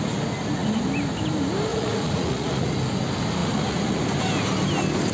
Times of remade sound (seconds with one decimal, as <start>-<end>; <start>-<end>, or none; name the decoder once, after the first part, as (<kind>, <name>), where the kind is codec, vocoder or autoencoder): 1.7-2.7 (vocoder, Vocos); 3.4-4.0